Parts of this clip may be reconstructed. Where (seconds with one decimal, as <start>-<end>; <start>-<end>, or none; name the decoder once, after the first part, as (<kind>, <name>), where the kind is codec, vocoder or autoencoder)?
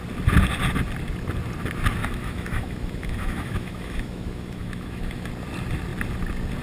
2.0-5.3 (autoencoder, DAC-VAE)